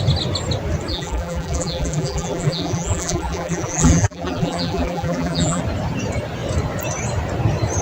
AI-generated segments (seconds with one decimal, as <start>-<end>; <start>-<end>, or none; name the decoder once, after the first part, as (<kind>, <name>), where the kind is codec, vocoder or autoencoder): 0.9-5.6 (vocoder, BigVGAN v2)